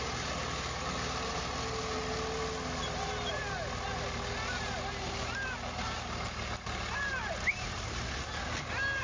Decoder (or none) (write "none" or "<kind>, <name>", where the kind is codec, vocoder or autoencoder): none